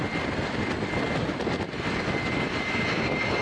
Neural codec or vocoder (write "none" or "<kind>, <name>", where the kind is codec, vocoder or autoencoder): none